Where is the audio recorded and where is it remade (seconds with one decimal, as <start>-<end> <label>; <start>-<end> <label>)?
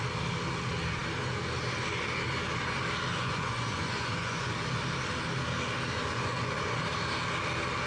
0.0-3.1 recorded; 3.1-4.5 remade; 4.5-6.0 recorded; 6.0-6.8 remade; 6.8-7.9 recorded